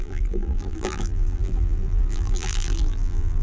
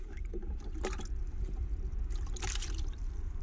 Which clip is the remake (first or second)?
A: first